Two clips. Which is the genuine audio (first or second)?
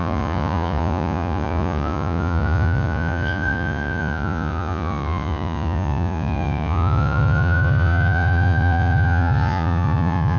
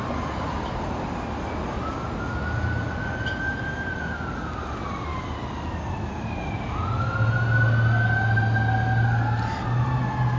second